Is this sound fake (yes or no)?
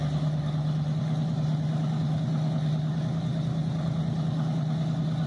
no